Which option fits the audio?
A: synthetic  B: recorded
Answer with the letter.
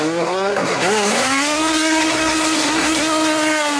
A